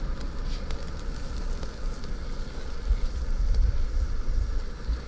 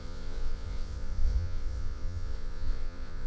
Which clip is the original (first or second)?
first